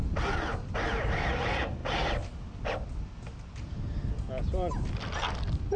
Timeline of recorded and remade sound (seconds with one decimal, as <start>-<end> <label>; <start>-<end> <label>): 0.0-5.8 recorded